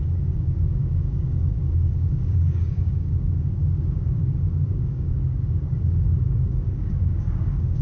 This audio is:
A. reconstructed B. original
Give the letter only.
A